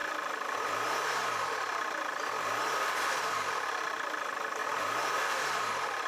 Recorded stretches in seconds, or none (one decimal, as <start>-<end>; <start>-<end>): 0.0-6.1